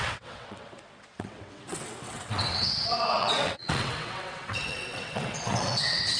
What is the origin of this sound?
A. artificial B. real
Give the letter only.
A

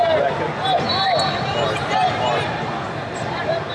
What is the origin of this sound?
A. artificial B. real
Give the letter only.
A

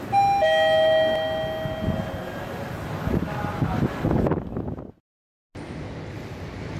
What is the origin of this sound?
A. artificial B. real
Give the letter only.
B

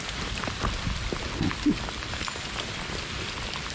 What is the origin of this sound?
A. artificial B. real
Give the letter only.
B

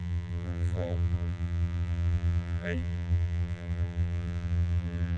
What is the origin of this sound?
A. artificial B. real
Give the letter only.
A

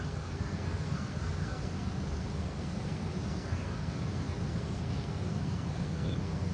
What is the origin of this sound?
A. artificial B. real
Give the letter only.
A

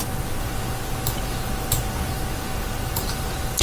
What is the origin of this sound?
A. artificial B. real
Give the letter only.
B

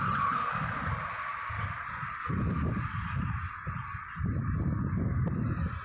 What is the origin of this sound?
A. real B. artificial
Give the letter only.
A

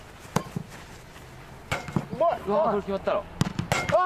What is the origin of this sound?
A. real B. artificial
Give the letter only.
A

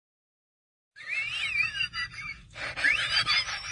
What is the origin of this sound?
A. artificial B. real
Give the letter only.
B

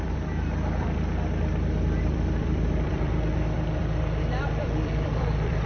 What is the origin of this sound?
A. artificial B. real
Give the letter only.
A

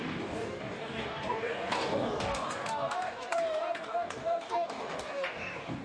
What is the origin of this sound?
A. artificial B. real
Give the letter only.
A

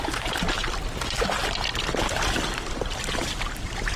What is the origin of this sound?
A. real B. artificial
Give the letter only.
A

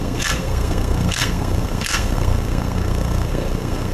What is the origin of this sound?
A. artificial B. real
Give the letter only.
A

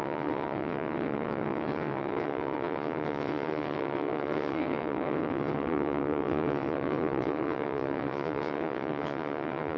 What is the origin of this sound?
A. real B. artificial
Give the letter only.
B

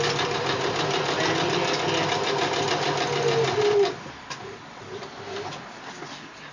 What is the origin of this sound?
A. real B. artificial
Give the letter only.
A